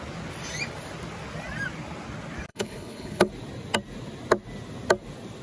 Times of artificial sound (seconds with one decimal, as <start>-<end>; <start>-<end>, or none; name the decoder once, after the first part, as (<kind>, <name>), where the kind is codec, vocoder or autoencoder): 2.5-3.3 (codec, HILCodec)